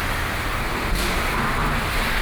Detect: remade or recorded recorded